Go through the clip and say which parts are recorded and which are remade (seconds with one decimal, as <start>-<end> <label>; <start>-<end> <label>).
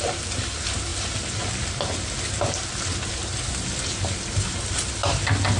0.0-5.6 recorded